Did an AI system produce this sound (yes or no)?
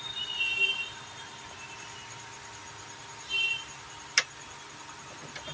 no